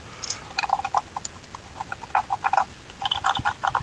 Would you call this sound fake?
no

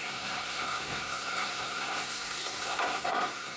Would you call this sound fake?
yes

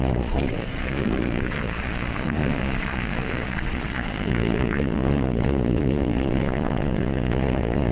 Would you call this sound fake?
yes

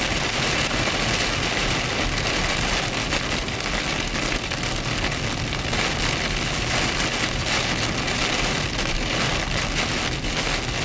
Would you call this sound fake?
no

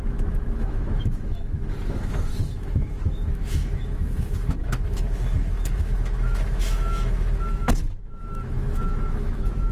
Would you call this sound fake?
yes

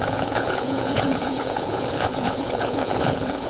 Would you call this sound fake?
yes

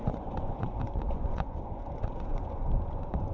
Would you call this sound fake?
yes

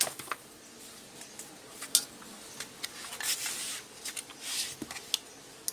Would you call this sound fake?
no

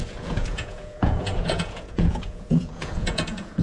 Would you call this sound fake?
yes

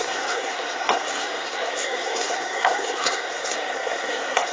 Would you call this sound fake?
yes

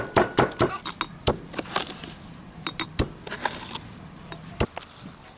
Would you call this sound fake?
no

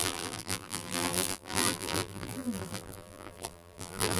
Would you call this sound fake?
yes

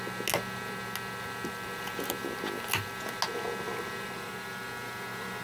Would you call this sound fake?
no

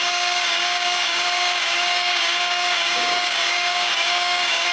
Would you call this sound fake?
yes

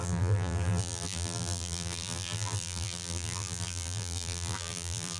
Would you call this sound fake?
yes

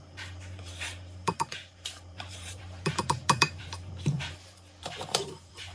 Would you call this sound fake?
yes